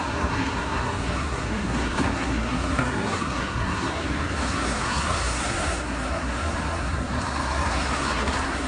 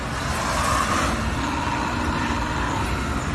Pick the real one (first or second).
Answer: second